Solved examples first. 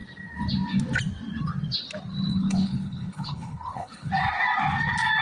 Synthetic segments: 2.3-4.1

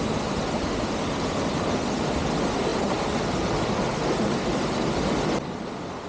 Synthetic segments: none

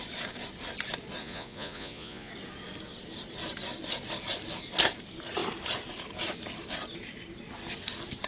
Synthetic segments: 1.2-2.3

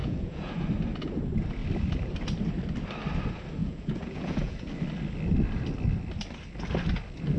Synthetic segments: 0.0-0.6; 3.6-4.7

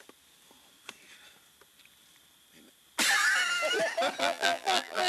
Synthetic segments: 4.2-5.1

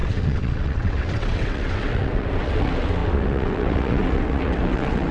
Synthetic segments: 0.0-5.1

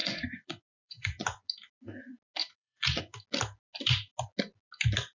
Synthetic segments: 0.0-1.5; 2.4-3.0